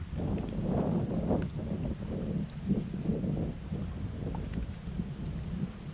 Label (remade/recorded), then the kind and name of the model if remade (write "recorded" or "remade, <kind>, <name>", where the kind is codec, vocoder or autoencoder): recorded